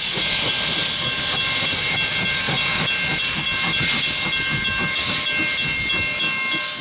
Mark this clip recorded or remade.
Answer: recorded